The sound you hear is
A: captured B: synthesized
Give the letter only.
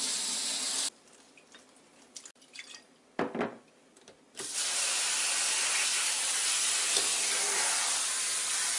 A